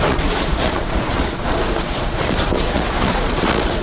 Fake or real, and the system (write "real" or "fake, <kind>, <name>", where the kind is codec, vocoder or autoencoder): fake, vocoder, Vocos